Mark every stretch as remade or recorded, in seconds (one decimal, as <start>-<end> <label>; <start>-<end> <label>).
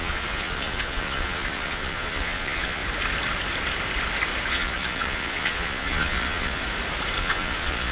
0.0-2.8 remade; 2.8-4.5 recorded; 4.5-6.6 remade; 6.6-7.2 recorded; 7.2-7.9 remade